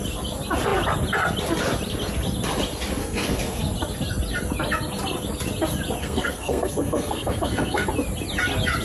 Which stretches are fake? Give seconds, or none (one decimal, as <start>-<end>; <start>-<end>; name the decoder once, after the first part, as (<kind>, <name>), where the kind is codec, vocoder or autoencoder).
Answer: 3.0-3.6 (codec, SNAC); 6.0-7.9